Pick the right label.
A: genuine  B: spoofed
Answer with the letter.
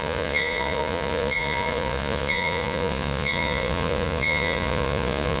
B